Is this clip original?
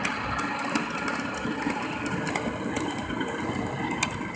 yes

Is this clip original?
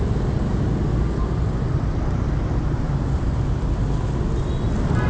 yes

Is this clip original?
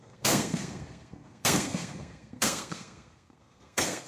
no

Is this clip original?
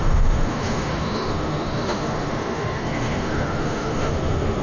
no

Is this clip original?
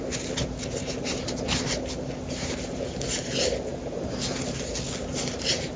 yes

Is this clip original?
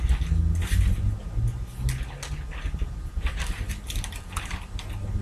yes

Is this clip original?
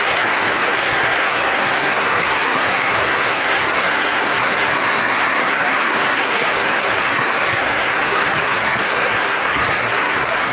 no